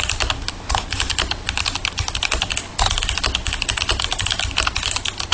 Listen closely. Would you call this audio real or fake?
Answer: real